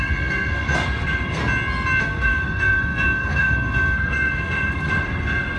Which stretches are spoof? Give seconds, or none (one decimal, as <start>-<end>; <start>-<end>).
0.0-1.4; 2.0-5.6